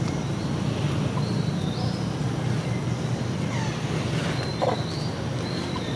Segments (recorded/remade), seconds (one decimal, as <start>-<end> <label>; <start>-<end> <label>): 0.0-6.0 recorded